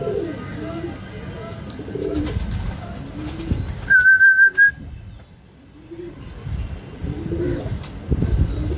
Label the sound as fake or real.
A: real